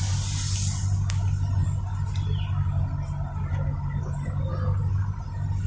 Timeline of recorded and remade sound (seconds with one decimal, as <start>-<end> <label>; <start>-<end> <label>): 0.0-5.7 recorded